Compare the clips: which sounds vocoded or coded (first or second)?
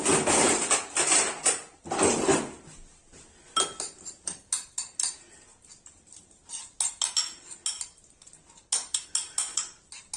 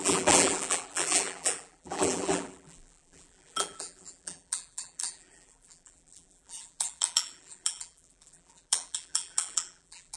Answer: second